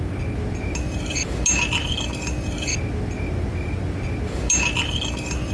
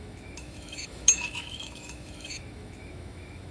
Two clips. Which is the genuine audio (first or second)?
first